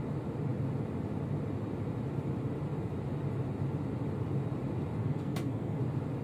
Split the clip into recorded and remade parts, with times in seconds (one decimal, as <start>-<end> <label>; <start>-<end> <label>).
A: 0.0-5.0 recorded; 5.0-5.8 remade; 5.8-6.2 recorded